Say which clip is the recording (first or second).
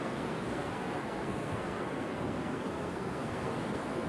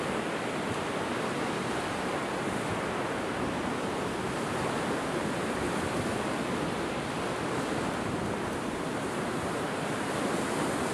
second